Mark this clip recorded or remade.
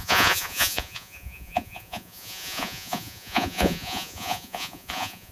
remade